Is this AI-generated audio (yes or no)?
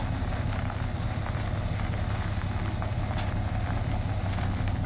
no